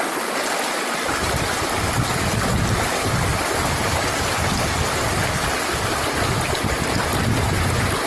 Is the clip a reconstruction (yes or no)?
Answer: no